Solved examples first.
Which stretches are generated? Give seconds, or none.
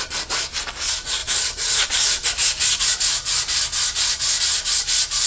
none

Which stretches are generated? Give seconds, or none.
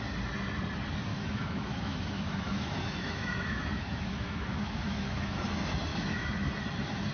1.1-5.4 (autoencoder, DAC-VAE); 5.9-6.5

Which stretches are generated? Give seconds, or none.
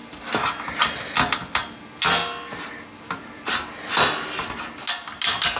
none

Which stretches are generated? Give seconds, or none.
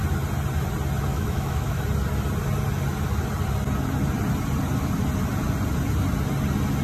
1.1-1.8 (autoencoder, DAC-VAE)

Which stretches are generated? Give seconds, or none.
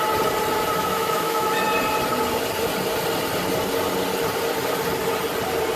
0.8-1.5 (autoencoder, DAC-VAE)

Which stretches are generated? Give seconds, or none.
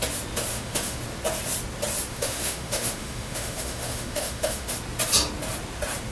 0.5-1.0 (autoencoder, DAC-VAE); 2.1-4.7